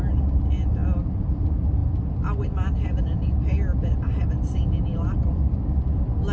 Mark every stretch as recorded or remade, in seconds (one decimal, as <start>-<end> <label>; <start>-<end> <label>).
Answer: 0.0-6.3 recorded